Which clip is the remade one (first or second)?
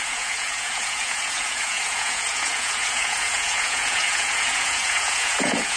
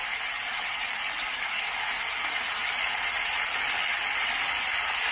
first